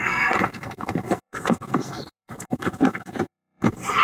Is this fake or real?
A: fake